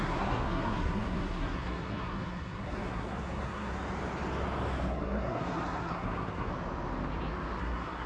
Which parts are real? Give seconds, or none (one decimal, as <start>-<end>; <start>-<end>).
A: 3.7-4.9; 6.5-7.6